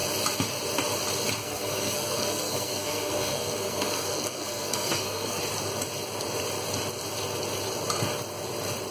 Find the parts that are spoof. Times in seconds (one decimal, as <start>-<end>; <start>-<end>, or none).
1.4-5.4